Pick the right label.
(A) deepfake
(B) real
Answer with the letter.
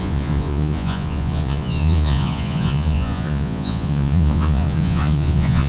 A